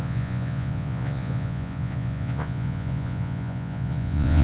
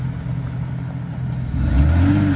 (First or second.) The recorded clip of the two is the second